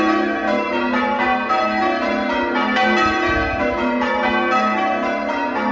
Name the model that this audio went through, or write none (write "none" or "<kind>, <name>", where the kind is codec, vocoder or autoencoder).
none